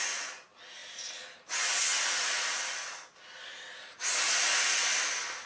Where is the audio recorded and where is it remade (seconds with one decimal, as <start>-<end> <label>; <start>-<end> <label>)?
0.0-5.5 recorded